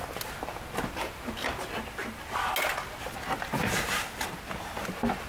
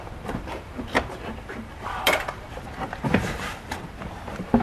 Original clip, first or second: first